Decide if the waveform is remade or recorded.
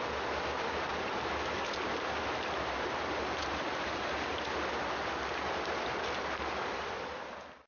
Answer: recorded